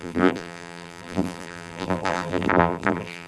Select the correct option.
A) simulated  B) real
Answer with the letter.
A